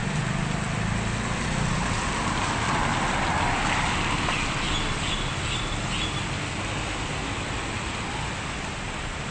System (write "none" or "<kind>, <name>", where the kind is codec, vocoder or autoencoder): none